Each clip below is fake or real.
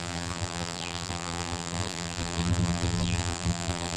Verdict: fake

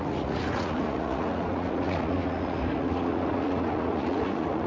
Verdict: fake